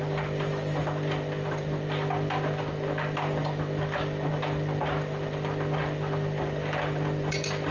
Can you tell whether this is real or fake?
real